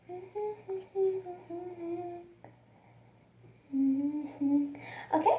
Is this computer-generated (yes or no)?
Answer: no